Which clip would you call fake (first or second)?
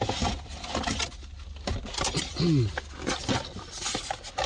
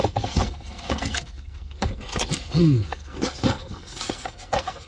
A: second